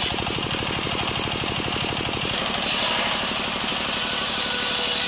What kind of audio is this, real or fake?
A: real